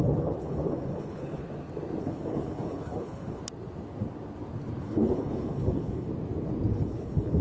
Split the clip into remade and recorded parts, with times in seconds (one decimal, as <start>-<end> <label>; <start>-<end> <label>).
0.0-1.4 remade; 1.4-2.0 recorded; 2.0-3.4 remade; 3.4-4.8 recorded; 4.8-6.1 remade; 6.1-6.7 recorded; 6.7-7.4 remade